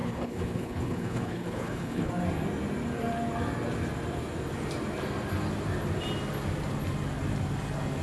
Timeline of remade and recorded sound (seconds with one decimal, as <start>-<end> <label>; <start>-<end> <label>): 0.0-2.1 remade; 2.1-8.0 recorded